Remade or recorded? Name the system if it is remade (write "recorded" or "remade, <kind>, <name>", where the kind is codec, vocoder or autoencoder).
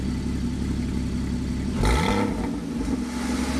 recorded